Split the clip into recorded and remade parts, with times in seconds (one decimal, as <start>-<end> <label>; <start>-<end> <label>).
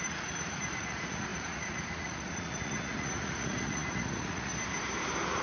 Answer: 0.0-4.5 remade; 4.5-5.4 recorded